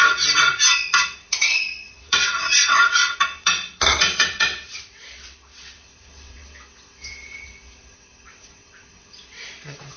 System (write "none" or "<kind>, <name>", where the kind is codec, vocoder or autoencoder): vocoder, WaveNeXt